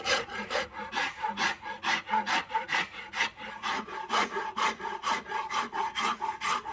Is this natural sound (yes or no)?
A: no